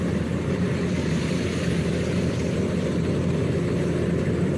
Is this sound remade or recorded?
remade